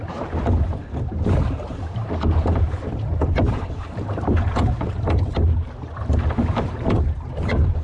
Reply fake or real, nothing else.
fake